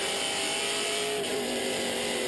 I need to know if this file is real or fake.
fake